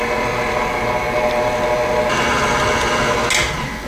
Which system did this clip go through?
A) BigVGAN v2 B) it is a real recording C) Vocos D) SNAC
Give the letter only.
B